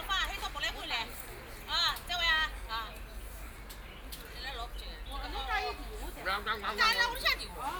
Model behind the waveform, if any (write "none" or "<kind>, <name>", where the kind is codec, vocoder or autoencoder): none